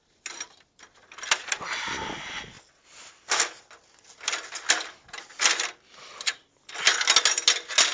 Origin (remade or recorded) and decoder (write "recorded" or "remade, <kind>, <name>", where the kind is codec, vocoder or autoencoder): recorded